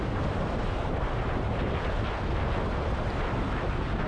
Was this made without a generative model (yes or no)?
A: yes